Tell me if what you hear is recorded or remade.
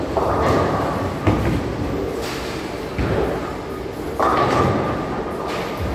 recorded